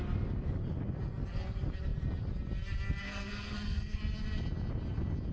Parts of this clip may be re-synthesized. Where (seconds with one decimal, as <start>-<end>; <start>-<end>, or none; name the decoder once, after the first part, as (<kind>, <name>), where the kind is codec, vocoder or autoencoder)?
3.0-4.0 (codec, SNAC)